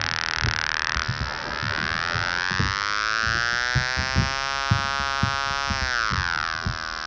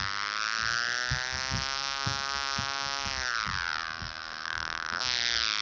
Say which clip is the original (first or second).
first